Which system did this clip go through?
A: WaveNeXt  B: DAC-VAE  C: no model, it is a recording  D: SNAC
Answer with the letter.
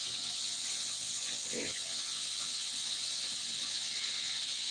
A